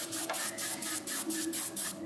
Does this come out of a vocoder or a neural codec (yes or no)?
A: no